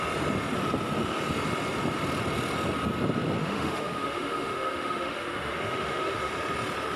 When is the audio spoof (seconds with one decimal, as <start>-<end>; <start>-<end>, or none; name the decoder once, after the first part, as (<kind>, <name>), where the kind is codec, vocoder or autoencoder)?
3.4-6.3 (autoencoder, DAC-VAE)

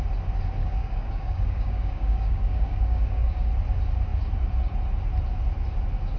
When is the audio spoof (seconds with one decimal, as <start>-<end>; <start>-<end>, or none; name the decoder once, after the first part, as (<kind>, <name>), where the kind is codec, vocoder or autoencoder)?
0.6-3.5 (codec, DAC)

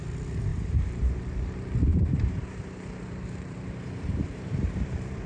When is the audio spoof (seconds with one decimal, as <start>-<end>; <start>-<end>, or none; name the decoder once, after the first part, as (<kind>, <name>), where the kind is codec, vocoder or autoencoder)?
0.5-1.2 (vocoder, BigVGAN v2); 1.9-5.3

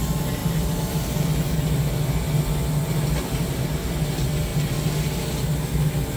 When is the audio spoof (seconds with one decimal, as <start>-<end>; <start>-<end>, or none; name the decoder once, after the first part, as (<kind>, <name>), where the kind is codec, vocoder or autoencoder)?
none